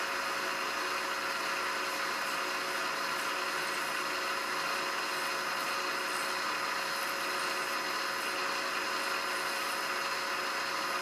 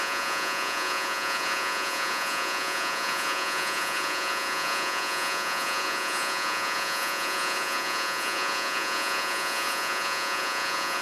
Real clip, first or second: first